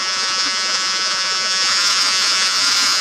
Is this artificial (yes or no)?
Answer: yes